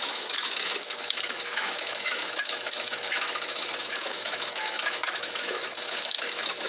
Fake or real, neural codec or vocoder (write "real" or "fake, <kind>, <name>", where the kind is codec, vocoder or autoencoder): fake, autoencoder, DAC-VAE